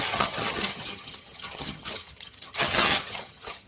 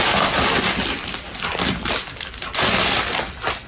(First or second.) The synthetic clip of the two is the first